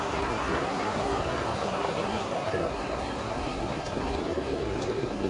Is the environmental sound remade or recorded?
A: remade